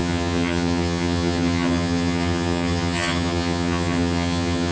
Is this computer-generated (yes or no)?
yes